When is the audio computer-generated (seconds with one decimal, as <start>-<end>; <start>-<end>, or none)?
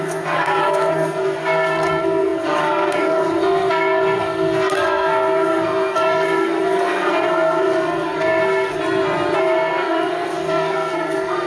0.0-8.8; 9.4-11.5